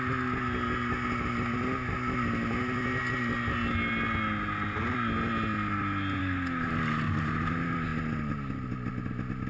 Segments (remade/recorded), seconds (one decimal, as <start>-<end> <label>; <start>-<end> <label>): 0.0-6.2 recorded; 6.2-6.7 remade; 6.7-9.5 recorded